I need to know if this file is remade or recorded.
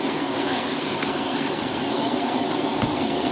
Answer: remade